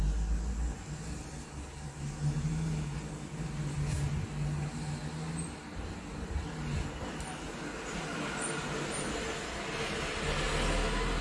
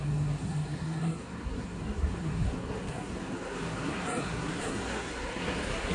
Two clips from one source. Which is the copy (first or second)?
second